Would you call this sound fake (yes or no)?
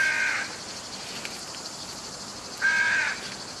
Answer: no